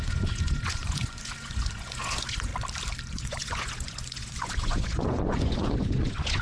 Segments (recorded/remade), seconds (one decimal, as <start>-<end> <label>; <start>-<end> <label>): 0.0-2.5 remade; 2.5-3.1 recorded; 3.1-6.4 remade